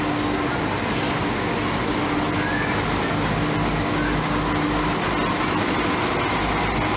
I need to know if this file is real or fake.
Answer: real